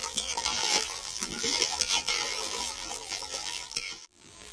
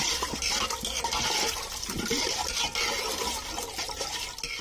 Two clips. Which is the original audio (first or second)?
second